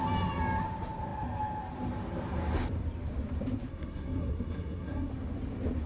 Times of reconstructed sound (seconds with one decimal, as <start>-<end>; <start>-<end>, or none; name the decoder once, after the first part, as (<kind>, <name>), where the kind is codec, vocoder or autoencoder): 3.7-5.1 (codec, SNAC)